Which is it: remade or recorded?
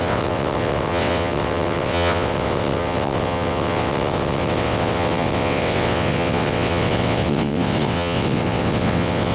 remade